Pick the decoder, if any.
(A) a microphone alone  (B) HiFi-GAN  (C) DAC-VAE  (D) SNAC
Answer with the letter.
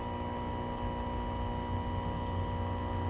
A